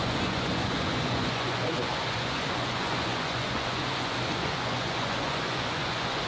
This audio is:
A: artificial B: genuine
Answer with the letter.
A